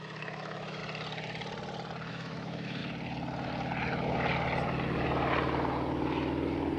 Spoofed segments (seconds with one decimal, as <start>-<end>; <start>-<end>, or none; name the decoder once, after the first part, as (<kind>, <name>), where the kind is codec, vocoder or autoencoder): 0.0-0.8 (autoencoder, DAC-VAE); 2.1-2.8